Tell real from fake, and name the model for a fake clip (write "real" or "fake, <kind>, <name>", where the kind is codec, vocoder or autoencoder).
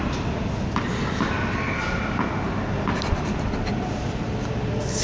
real